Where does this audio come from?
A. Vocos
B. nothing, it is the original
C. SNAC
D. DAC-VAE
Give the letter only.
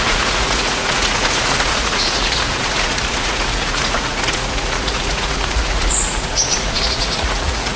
A